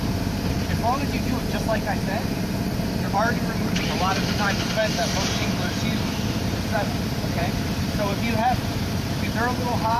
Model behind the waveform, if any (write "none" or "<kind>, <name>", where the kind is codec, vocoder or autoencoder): vocoder, BigVGAN v2